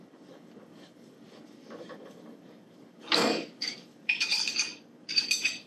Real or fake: fake